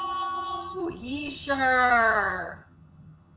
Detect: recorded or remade remade